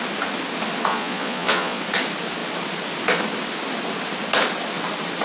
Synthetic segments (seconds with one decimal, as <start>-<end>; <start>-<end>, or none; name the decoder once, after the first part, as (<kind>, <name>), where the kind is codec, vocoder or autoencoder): 0.9-1.8 (vocoder, Vocos)

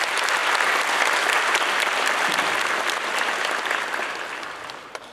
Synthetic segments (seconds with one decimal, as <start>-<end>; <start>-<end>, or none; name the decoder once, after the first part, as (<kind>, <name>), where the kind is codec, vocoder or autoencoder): none

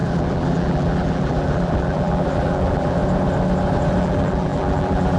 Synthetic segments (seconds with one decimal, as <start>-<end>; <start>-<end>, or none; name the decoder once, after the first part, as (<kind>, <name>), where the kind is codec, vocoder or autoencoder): 0.0-3.0 (vocoder, BigVGAN v2); 4.0-5.2

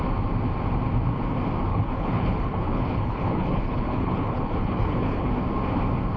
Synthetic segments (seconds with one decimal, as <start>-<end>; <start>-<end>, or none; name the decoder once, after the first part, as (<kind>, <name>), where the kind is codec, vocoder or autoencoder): 1.7-5.3 (codec, HILCodec)

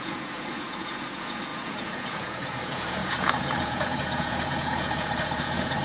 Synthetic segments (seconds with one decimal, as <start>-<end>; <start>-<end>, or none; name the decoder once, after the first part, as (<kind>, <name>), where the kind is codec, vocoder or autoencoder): 0.0-5.8 (vocoder, Vocos)